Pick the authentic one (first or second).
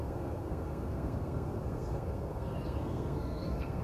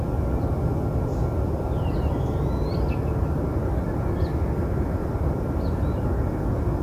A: second